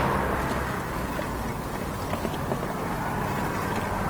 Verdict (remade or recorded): recorded